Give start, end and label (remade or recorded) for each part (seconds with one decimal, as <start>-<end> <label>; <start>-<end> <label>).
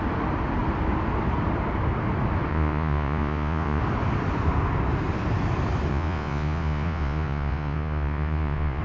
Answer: 0.0-2.5 recorded; 2.5-3.8 remade; 3.8-5.9 recorded; 5.9-8.8 remade